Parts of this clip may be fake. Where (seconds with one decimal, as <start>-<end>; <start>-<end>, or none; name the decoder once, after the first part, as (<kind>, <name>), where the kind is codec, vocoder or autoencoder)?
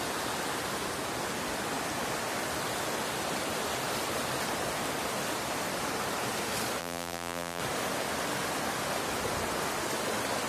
6.8-7.6 (vocoder, BigVGAN v2)